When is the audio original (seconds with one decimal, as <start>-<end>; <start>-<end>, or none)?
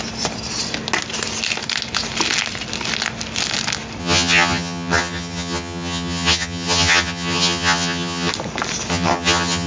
0.0-4.0; 8.3-8.9